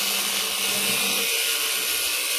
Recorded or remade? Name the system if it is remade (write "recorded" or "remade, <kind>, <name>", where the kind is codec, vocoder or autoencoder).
recorded